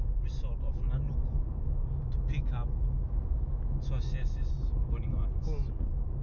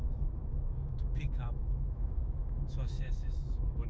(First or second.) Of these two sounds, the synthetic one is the second